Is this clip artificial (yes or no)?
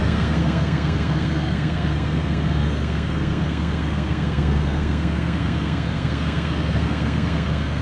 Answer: yes